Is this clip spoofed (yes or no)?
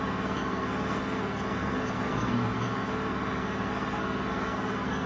yes